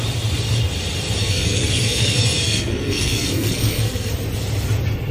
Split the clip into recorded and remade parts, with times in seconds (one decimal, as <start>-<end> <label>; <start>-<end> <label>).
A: 0.0-1.2 recorded; 1.2-4.1 remade; 4.1-5.1 recorded